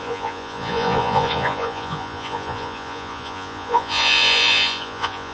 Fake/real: fake